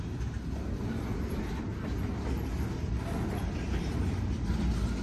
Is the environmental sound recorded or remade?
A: recorded